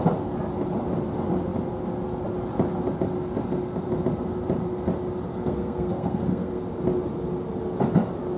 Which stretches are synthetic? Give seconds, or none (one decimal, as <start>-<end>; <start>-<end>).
5.3-6.6